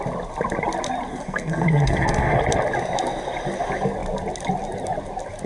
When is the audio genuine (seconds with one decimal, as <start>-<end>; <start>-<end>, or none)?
0.0-1.1; 2.4-5.5